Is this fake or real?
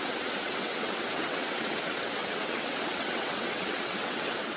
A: fake